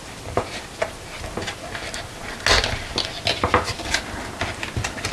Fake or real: real